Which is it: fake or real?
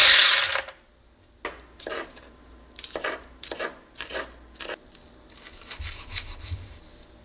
real